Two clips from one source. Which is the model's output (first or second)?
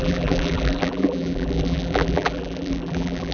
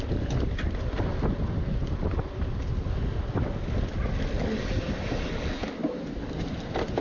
first